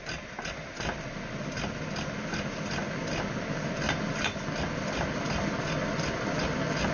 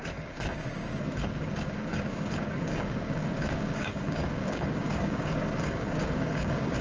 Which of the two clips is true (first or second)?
first